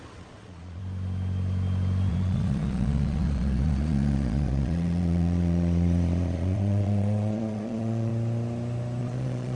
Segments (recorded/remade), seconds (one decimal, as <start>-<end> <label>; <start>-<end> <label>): 0.0-0.8 remade; 0.8-2.1 recorded; 2.1-8.1 remade; 8.1-9.0 recorded; 9.0-9.6 remade